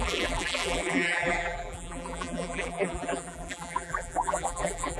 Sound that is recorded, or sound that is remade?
remade